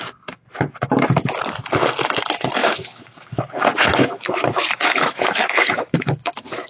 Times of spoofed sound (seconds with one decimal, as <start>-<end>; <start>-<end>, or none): 2.6-6.7